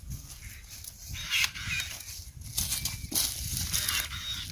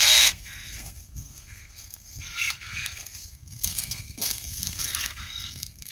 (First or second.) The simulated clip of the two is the second